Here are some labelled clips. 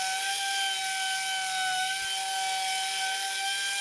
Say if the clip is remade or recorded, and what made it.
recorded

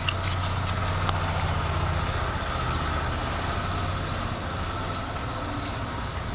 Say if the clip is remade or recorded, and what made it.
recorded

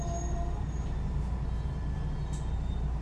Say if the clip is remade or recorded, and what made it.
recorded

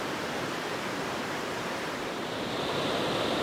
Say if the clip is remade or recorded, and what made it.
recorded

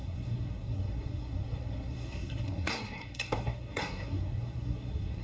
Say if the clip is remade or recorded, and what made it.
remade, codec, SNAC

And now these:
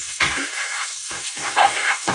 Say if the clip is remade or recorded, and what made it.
remade, codec, SNAC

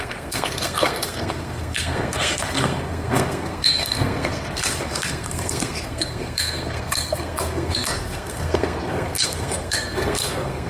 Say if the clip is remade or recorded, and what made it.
remade, codec, SNAC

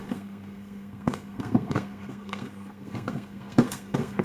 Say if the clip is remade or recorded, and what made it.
remade, codec, SNAC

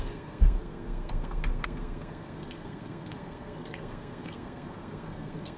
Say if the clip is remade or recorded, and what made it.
remade, codec, SNAC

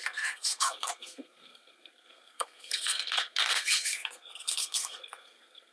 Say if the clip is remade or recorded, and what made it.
remade, codec, SNAC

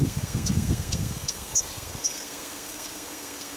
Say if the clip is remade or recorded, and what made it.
remade, codec, SNAC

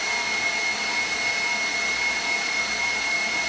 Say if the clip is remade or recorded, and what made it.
recorded